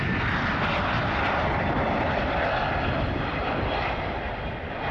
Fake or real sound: real